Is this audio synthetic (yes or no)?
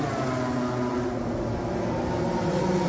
no